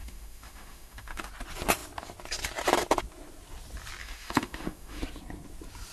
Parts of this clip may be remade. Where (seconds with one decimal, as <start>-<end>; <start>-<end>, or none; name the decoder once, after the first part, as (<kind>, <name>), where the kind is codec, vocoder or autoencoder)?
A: 0.0-1.3 (autoencoder, DAC-VAE); 4.0-5.0